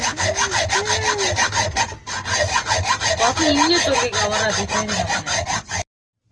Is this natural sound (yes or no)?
yes